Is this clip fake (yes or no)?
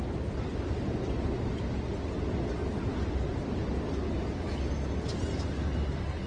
no